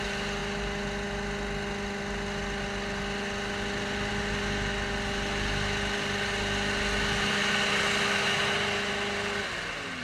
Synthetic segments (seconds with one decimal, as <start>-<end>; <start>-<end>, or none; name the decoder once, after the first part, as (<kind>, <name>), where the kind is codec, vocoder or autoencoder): none